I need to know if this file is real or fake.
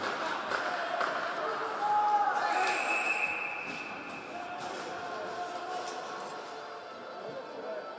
real